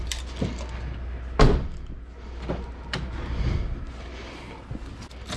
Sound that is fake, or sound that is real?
real